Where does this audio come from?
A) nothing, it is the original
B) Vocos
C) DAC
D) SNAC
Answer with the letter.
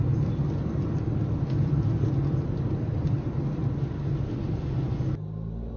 A